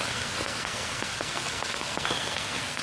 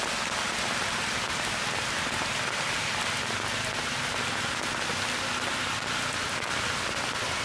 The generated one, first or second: first